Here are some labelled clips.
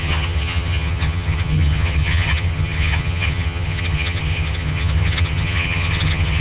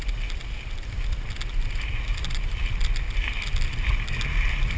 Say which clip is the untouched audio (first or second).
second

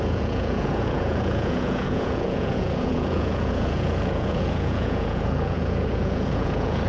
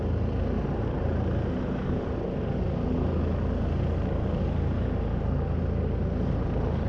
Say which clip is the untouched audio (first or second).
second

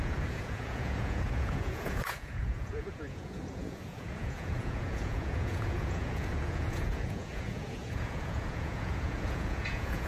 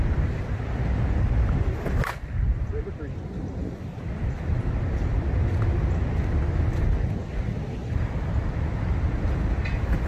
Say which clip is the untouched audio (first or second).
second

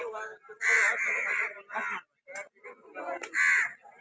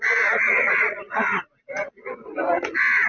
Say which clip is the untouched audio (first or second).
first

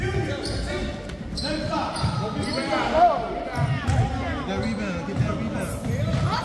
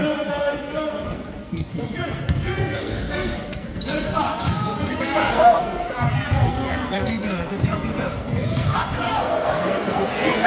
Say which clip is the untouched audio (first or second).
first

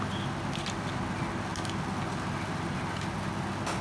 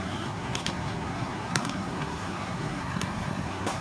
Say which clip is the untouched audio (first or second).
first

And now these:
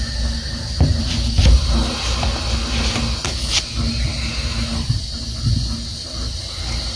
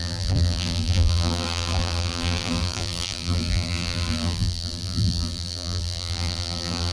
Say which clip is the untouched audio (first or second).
first